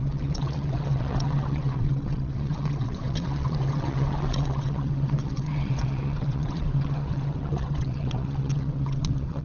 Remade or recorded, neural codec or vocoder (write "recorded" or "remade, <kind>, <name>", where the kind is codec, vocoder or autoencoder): remade, vocoder, WaveNeXt